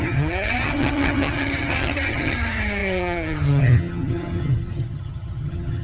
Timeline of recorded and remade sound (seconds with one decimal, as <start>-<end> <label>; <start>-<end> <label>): 0.0-5.8 remade